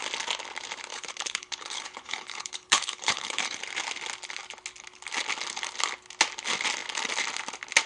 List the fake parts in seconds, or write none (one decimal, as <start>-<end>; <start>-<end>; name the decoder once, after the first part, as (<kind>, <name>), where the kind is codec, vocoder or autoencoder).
0.9-3.6 (codec, HILCodec)